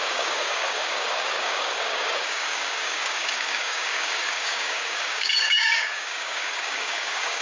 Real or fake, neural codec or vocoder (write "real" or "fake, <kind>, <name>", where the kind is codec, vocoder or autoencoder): fake, codec, DAC